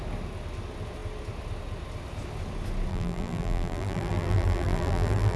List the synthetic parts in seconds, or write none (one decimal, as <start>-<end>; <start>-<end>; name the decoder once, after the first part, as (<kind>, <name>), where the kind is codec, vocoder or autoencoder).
2.9-5.4 (vocoder, BigVGAN v2)